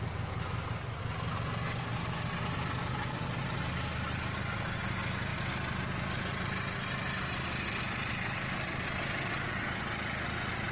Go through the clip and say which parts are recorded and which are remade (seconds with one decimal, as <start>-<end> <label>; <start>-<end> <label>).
0.0-10.7 recorded